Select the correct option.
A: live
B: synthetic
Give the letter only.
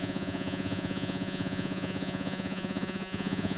B